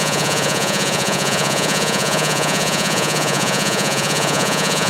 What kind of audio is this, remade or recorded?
remade